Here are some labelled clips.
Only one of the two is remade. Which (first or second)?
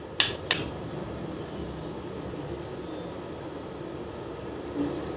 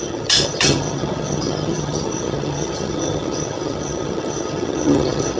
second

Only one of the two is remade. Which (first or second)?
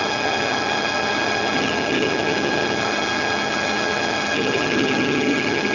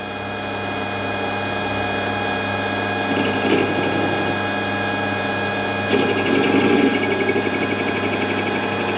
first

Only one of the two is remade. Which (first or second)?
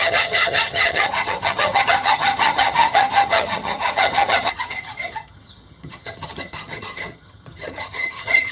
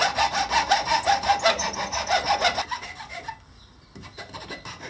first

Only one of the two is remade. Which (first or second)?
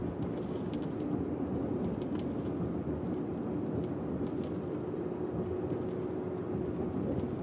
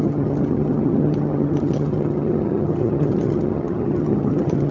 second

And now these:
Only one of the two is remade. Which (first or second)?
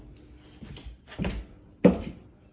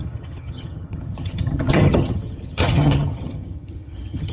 second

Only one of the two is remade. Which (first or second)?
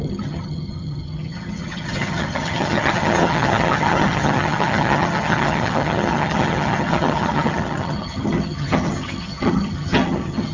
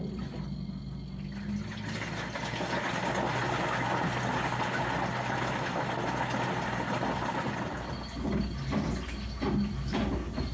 first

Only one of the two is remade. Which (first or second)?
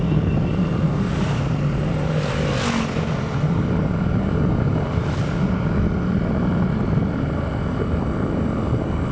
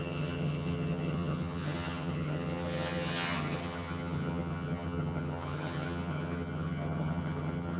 second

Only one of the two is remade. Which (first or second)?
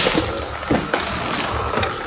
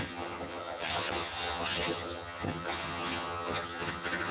second